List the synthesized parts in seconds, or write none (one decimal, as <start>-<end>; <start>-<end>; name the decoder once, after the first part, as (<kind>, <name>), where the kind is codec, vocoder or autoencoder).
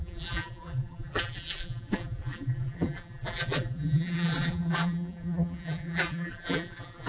0.0-7.1 (vocoder, BigVGAN v2)